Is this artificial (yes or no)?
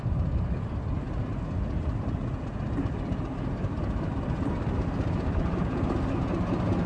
no